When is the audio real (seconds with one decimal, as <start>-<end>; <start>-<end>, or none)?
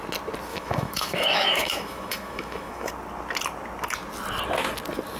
0.0-0.5; 2.9-5.2